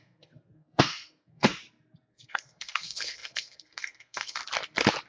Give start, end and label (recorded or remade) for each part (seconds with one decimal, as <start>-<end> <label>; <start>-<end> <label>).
0.0-1.5 remade; 1.5-2.1 recorded; 2.1-4.4 remade; 4.4-5.1 recorded